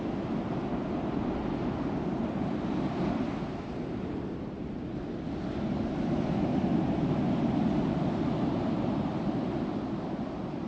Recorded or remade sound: recorded